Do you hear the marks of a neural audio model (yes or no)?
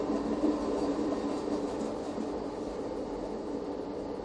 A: no